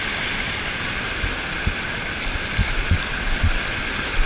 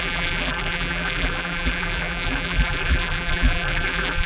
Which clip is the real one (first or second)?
first